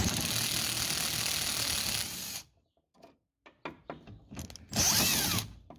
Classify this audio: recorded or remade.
recorded